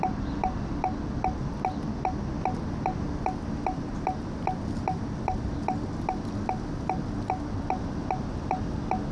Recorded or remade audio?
recorded